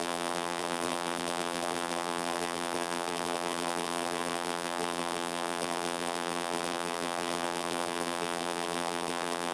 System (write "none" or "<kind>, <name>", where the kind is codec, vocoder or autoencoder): vocoder, BigVGAN v2